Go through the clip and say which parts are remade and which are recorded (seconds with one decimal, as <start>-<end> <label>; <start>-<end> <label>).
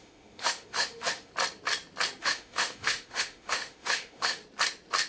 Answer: 0.0-1.3 remade; 1.3-2.2 recorded; 2.2-4.4 remade; 4.4-5.1 recorded